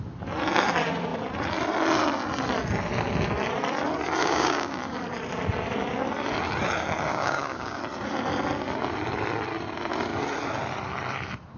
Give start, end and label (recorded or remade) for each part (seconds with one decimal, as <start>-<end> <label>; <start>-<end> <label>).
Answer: 0.0-4.2 recorded; 4.2-4.8 remade; 4.8-7.1 recorded; 7.1-7.8 remade; 7.8-11.6 recorded